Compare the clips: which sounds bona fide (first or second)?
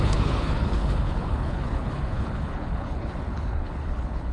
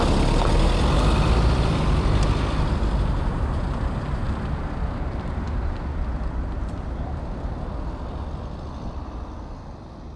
second